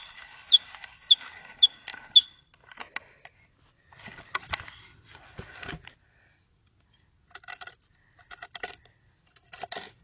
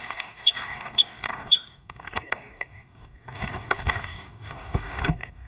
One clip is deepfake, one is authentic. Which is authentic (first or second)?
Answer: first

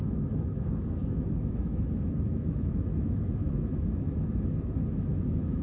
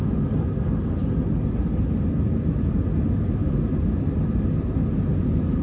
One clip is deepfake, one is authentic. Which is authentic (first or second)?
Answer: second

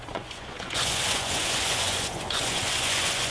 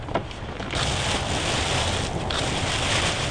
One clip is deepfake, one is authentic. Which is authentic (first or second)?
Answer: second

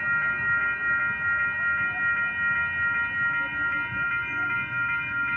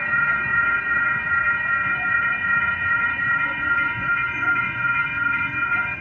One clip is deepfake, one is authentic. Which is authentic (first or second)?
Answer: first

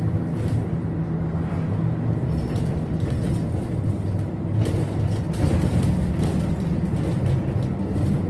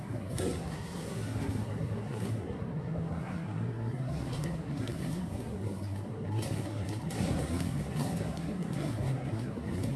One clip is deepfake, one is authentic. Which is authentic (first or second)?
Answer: first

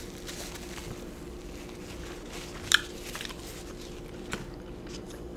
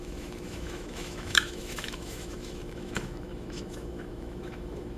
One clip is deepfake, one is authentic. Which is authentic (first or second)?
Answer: first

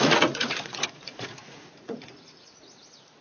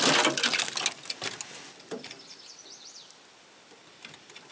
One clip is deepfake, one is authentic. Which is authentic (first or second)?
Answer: second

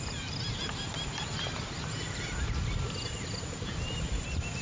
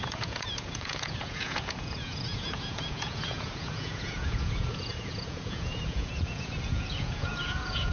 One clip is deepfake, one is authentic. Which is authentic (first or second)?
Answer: first